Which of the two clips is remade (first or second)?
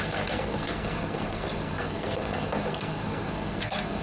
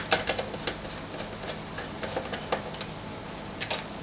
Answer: first